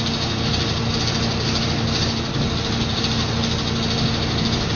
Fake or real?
real